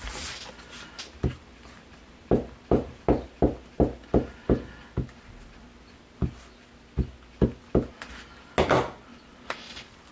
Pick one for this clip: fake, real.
real